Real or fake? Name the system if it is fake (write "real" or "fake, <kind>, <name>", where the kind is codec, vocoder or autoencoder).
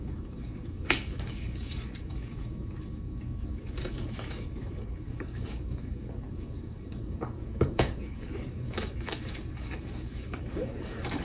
fake, codec, DAC